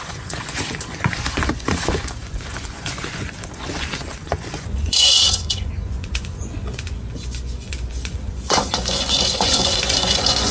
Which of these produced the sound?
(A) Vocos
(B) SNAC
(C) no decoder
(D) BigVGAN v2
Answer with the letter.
A